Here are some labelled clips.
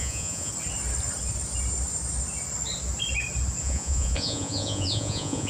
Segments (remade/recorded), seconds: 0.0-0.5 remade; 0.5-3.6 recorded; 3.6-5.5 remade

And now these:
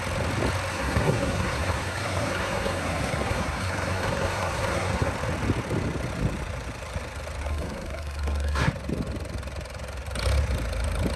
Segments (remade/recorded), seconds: 0.0-0.7 recorded; 0.7-5.1 remade; 5.1-7.4 recorded; 7.4-8.7 remade; 8.7-11.2 recorded

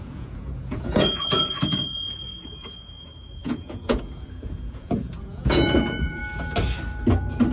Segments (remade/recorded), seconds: 0.0-6.2 remade; 6.2-7.5 recorded